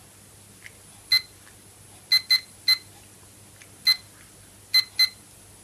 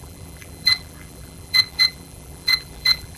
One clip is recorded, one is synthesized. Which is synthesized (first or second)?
second